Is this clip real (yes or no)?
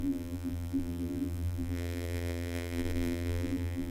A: no